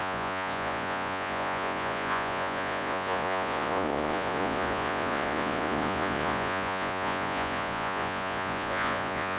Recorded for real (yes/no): no